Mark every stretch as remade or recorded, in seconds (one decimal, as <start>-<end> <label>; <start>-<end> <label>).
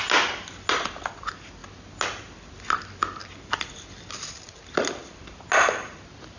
0.0-6.4 recorded